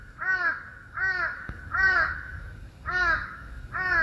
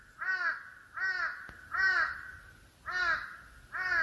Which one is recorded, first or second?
second